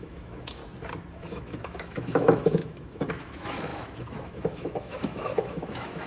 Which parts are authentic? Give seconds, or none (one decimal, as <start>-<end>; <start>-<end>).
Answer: 0.6-1.1